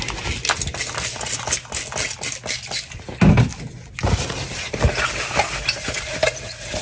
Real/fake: real